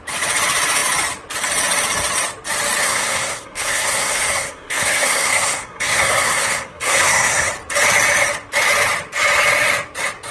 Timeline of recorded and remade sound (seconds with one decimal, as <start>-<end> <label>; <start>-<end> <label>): 0.0-2.8 recorded; 2.8-7.5 remade; 7.5-10.3 recorded